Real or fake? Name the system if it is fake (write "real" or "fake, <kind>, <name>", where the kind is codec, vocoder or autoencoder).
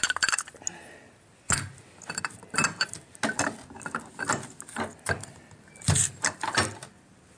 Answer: real